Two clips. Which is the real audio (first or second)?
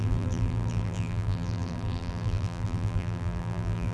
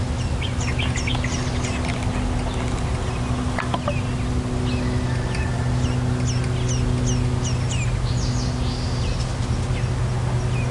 second